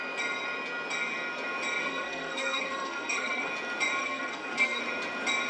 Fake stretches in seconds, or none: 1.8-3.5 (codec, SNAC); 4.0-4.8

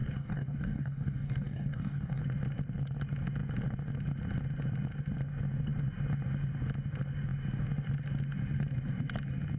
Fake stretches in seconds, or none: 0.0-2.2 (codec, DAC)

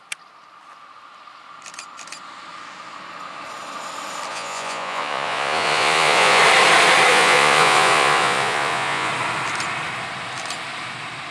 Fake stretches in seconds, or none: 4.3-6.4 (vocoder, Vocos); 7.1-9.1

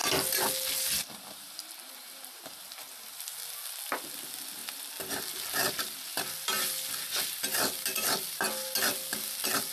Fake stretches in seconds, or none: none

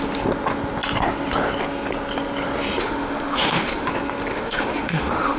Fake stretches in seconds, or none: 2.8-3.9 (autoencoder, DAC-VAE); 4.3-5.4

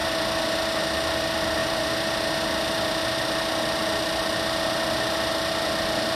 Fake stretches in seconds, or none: none

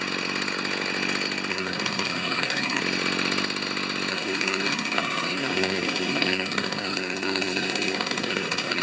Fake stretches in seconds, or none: 1.5-2.8 (codec, SNAC); 4.1-8.8

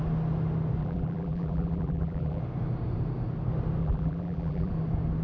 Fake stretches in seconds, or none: 0.8-2.4 (vocoder, BigVGAN v2); 3.8-4.7